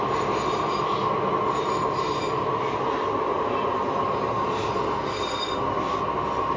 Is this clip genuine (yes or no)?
yes